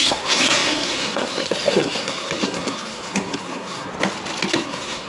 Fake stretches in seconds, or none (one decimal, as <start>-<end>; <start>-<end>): 0.0-3.9; 4.5-5.1